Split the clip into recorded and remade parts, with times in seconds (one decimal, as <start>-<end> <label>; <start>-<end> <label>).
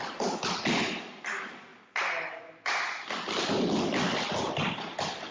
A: 0.0-5.3 recorded